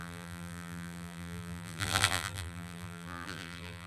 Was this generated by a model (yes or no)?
yes